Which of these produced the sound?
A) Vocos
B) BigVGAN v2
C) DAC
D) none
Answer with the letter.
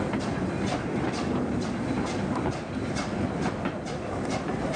B